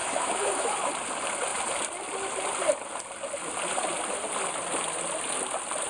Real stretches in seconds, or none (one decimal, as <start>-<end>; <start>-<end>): 0.9-5.9